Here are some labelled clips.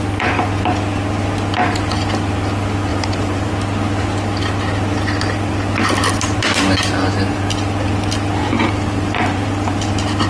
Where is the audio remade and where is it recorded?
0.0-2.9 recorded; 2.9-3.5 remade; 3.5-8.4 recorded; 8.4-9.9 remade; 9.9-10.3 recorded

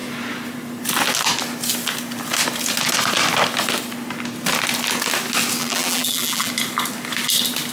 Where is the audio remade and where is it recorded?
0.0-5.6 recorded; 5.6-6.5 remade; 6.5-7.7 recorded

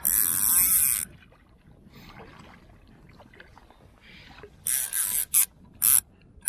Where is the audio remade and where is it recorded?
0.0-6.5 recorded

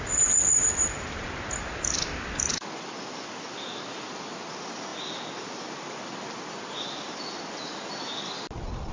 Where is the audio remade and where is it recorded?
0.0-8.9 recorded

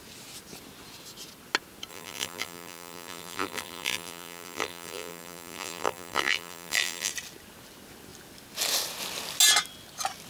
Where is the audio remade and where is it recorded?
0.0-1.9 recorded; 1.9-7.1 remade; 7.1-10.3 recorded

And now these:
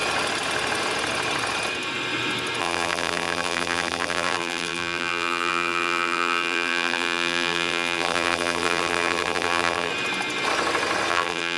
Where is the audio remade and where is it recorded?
0.0-2.6 recorded; 2.6-9.9 remade; 9.9-11.1 recorded; 11.1-11.6 remade

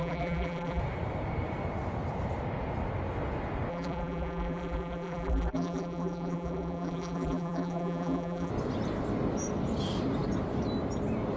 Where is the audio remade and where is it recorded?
0.0-0.8 remade; 0.8-3.7 recorded; 3.7-8.5 remade; 8.5-11.4 recorded

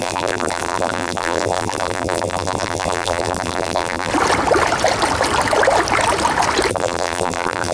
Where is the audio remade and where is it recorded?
0.0-4.1 remade; 4.1-6.7 recorded; 6.7-7.7 remade